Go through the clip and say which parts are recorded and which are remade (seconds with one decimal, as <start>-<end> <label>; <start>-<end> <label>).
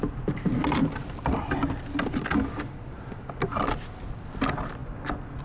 0.0-5.4 recorded